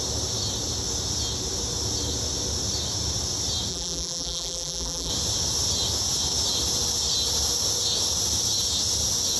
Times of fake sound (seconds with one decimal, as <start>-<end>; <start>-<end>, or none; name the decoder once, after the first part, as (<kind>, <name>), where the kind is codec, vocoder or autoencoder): 3.7-5.1 (vocoder, BigVGAN v2)